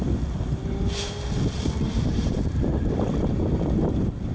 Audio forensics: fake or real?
real